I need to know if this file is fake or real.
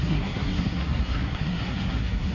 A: fake